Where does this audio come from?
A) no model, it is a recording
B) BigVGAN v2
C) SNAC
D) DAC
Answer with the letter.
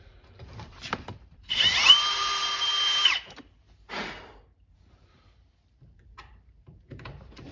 B